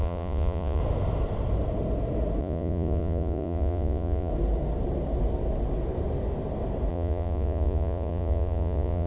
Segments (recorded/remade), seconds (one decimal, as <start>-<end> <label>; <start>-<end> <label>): 0.0-0.8 remade; 0.8-2.4 recorded; 2.4-4.3 remade; 4.3-6.9 recorded; 6.9-9.1 remade